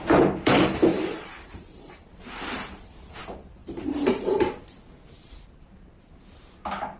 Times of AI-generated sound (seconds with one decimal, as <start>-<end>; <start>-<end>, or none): 0.9-2.1; 3.6-4.5